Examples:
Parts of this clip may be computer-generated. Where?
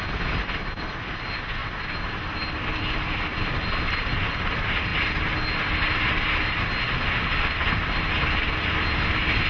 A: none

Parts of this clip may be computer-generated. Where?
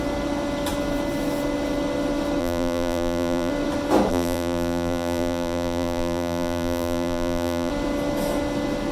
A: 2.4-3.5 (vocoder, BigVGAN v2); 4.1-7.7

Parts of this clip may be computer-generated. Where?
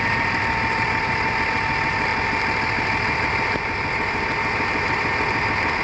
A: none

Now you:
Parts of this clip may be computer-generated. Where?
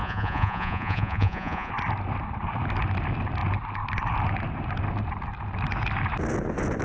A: 0.0-1.7 (vocoder, Vocos)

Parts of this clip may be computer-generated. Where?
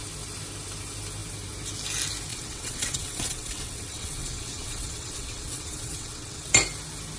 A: 2.3-6.5 (vocoder, WaveNeXt)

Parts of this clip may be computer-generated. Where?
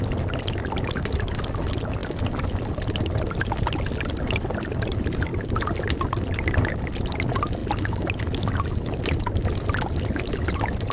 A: none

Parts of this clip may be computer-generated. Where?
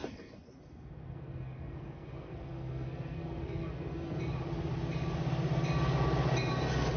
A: 0.0-4.2 (codec, SNAC)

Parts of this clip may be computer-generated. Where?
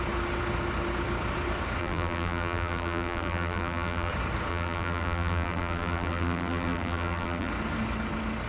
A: 1.8-4.1 (vocoder, BigVGAN v2); 4.5-7.5